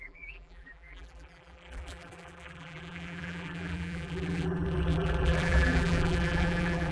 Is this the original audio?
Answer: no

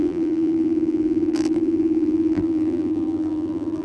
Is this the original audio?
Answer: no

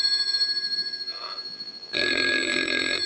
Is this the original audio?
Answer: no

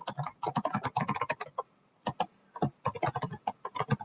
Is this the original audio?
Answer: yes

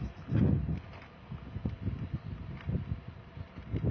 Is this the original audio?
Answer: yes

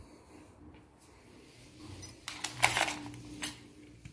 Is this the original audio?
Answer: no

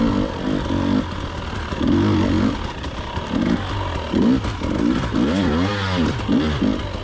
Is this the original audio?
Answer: yes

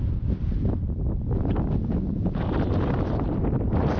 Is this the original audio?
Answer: no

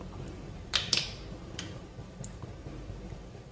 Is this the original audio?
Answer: no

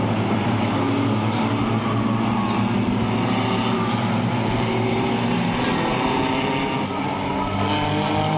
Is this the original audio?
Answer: yes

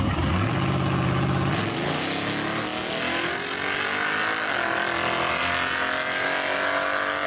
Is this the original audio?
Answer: yes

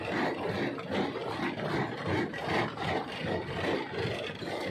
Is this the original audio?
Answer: yes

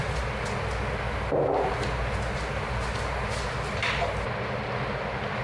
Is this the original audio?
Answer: yes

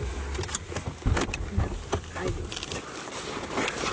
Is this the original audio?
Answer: yes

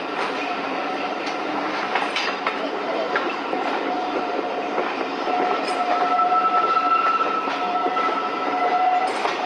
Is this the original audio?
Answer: no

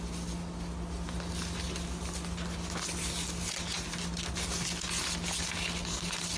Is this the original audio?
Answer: yes